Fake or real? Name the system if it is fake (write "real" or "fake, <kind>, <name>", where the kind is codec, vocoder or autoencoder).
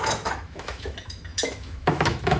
fake, autoencoder, DAC-VAE